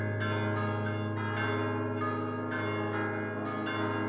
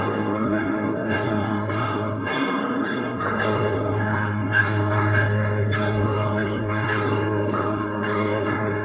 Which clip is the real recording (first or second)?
first